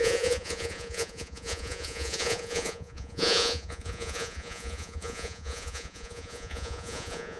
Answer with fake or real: fake